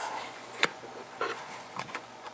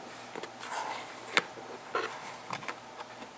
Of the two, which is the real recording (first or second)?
second